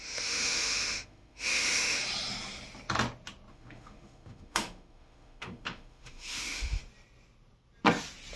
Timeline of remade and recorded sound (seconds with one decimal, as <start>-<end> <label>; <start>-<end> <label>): 0.0-2.0 remade; 2.0-3.5 recorded; 3.5-6.8 remade; 6.8-8.4 recorded